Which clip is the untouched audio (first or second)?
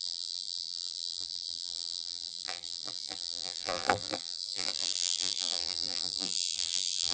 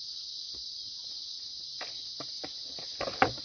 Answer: second